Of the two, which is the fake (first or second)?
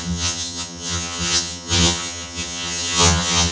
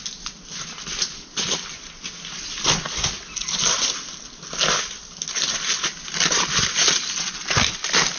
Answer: first